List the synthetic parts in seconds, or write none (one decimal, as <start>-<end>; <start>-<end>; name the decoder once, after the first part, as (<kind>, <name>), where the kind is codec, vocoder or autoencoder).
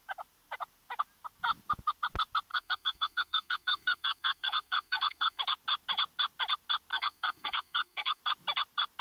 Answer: 2.5-5.4 (codec, SNAC); 6.9-8.2